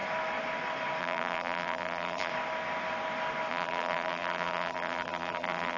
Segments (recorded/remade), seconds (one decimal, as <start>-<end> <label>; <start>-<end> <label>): 0.0-1.0 recorded; 1.0-2.3 remade; 2.3-3.5 recorded; 3.5-5.8 remade